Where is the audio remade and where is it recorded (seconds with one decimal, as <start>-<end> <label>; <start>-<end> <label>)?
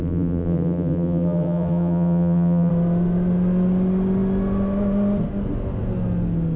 0.0-2.7 remade; 2.7-6.6 recorded